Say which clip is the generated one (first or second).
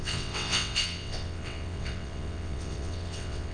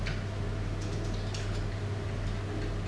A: first